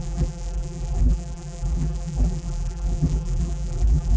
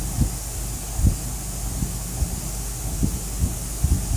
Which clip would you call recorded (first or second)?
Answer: second